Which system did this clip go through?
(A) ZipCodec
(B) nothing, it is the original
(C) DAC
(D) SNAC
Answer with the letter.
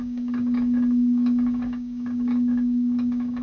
C